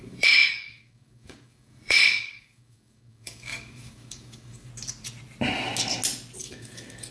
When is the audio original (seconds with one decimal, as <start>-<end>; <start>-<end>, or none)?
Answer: 4.7-6.4